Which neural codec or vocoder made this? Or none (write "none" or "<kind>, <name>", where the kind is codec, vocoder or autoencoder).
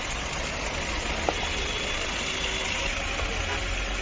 none